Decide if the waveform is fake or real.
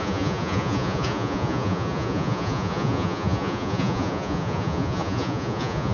fake